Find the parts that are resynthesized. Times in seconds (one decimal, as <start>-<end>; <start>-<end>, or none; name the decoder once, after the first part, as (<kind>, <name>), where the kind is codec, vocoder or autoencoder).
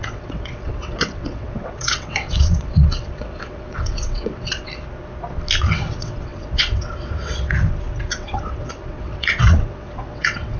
0.0-4.7 (vocoder, WaveNeXt); 5.6-10.6